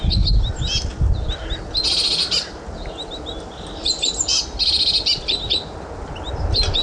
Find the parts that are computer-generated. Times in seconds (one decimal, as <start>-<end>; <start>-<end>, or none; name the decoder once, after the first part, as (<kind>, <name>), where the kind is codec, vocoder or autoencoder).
none